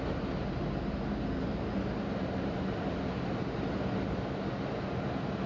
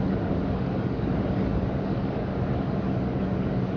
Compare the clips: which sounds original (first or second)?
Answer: first